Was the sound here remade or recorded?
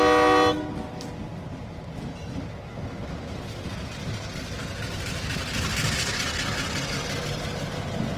recorded